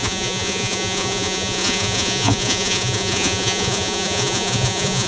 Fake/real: fake